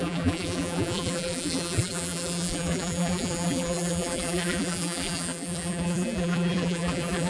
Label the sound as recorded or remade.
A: remade